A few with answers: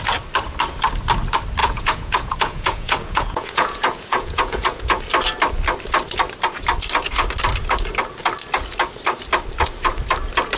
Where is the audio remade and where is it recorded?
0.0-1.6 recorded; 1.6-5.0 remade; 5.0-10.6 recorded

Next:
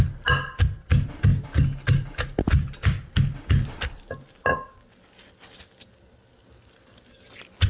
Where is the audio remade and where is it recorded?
0.0-1.3 recorded; 1.3-4.0 remade; 4.0-7.7 recorded

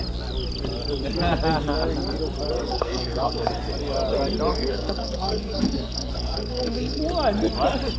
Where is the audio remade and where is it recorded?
0.0-2.6 recorded; 2.6-3.5 remade; 3.5-4.5 recorded; 4.5-7.0 remade; 7.0-8.0 recorded

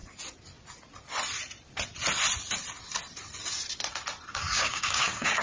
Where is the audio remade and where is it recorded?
0.0-4.3 recorded; 4.3-5.4 remade

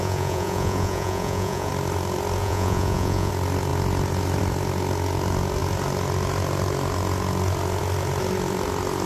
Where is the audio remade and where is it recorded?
0.0-1.7 remade; 1.7-2.4 recorded; 2.4-3.3 remade; 3.3-9.1 recorded

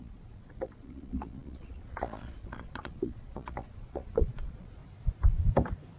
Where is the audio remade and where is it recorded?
0.0-4.8 remade; 4.8-6.0 recorded

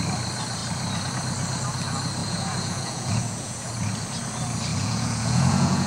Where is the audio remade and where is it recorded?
0.0-2.2 recorded; 2.2-3.7 remade; 3.7-4.7 recorded; 4.7-5.9 remade

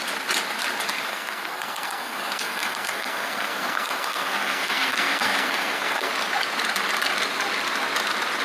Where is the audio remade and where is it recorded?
0.0-1.1 recorded; 1.1-6.1 remade; 6.1-8.4 recorded